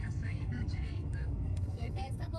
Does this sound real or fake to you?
fake